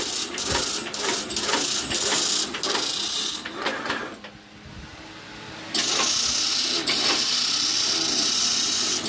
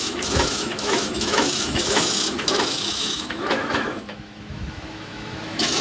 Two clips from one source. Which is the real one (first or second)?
first